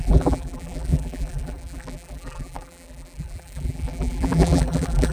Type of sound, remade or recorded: remade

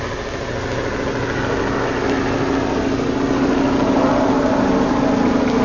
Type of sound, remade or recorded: recorded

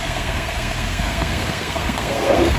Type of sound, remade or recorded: remade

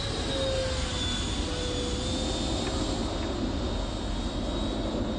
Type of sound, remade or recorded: recorded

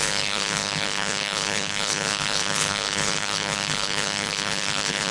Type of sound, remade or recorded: remade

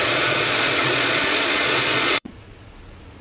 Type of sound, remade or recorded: remade